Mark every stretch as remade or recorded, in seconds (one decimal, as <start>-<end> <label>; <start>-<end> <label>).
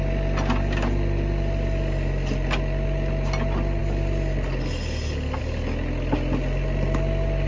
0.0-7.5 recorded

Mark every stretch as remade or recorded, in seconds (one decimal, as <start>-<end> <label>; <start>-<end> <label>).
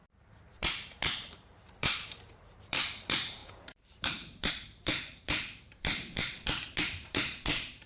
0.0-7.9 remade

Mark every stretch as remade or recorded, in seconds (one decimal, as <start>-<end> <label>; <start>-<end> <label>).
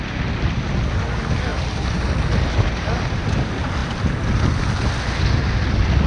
0.0-6.1 recorded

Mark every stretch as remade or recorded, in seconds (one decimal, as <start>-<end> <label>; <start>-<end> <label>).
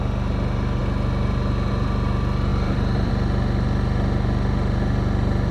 0.0-2.5 recorded; 2.5-3.1 remade; 3.1-5.5 recorded